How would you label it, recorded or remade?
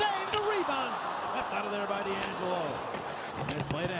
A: recorded